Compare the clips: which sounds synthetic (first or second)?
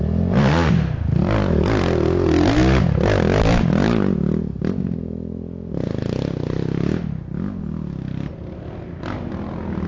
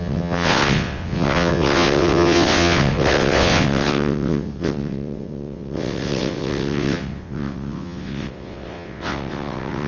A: second